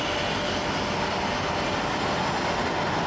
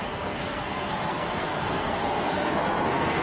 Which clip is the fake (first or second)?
second